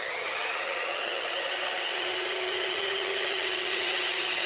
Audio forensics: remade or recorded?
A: remade